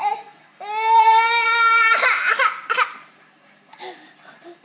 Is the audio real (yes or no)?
yes